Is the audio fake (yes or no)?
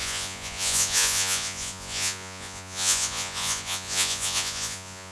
yes